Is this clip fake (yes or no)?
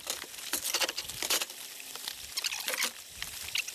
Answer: no